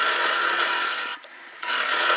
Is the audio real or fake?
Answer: fake